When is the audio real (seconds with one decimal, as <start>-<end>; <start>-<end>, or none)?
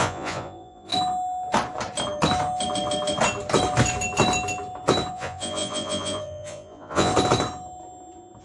0.9-5.1; 7.1-8.4